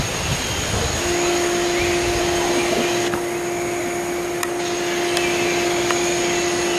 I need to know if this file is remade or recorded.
recorded